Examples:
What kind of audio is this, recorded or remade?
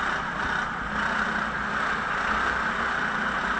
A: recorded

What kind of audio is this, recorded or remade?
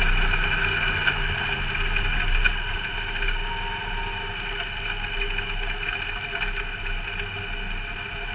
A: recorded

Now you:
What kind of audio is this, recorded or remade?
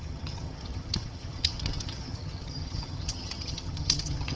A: remade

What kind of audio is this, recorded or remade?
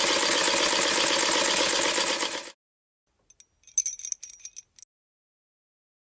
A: recorded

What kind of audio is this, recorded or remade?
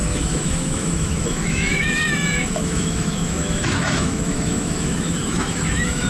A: remade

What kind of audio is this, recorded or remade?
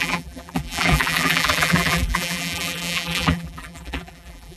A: remade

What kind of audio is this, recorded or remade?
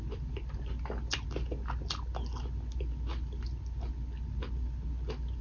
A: recorded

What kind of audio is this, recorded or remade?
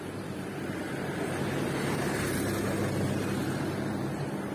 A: remade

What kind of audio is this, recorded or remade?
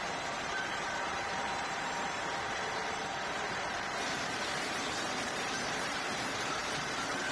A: remade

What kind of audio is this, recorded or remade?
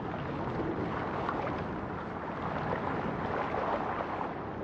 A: recorded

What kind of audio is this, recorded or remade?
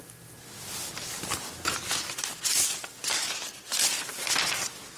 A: recorded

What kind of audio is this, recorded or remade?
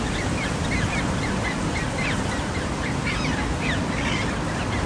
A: recorded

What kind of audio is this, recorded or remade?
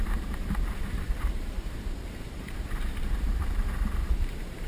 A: remade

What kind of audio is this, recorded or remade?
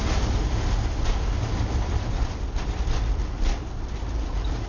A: recorded